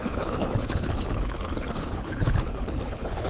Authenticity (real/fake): fake